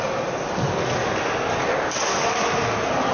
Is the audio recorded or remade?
recorded